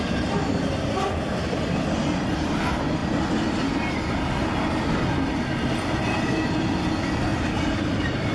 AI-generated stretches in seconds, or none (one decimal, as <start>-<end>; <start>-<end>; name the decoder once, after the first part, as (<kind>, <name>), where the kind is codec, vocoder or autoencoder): 7.3-8.3 (vocoder, BigVGAN v2)